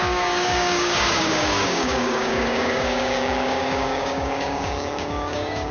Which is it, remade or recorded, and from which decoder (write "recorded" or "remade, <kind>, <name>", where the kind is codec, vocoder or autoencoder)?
remade, codec, DAC